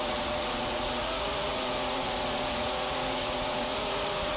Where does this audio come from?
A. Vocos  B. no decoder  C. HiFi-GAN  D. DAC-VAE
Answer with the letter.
A